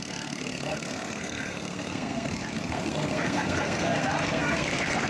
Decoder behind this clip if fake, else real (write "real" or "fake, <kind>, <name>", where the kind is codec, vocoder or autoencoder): fake, codec, SNAC